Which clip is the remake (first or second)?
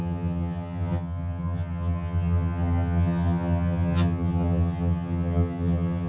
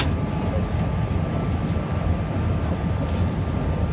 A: first